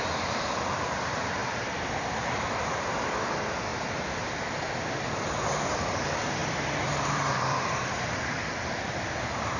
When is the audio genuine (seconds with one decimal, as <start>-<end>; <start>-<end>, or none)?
0.0-1.4; 3.0-6.4; 8.9-9.6